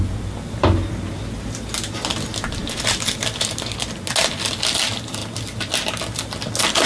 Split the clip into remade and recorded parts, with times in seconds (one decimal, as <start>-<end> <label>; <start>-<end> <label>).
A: 0.0-6.9 recorded